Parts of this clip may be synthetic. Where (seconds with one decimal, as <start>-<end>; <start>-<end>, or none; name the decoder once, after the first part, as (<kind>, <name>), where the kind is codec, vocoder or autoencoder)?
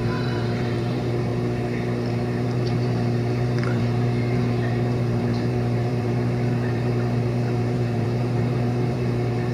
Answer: 0.0-1.3 (vocoder, BigVGAN v2); 2.1-9.5